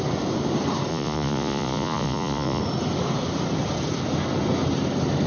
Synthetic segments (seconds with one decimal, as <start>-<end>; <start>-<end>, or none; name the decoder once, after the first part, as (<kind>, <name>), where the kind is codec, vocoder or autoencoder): 0.9-2.6 (vocoder, Vocos)